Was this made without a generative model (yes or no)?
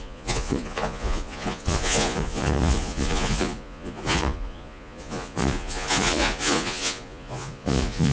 no